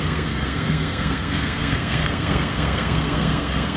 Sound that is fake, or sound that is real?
fake